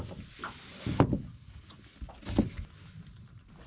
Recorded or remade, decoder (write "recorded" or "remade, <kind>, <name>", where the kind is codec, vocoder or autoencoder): recorded